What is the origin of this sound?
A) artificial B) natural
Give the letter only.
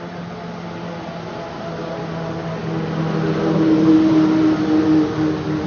B